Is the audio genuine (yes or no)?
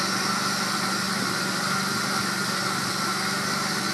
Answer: yes